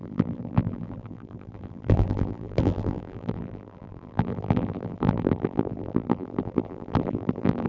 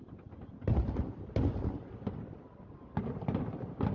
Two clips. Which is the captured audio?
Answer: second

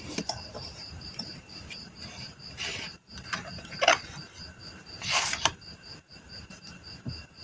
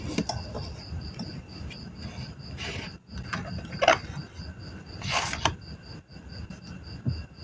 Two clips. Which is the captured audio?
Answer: second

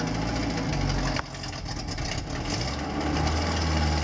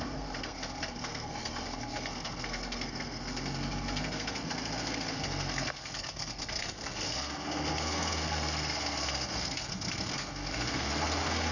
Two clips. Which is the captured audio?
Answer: first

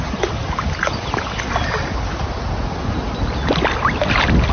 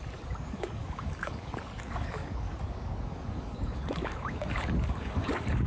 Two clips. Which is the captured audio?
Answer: first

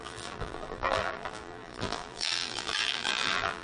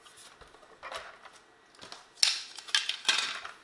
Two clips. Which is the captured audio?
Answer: second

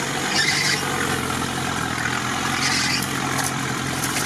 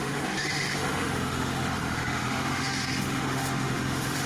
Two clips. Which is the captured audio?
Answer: first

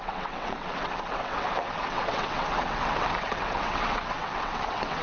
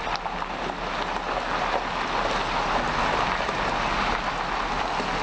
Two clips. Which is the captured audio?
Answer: second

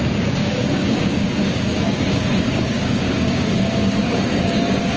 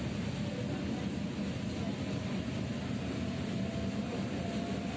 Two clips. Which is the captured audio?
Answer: second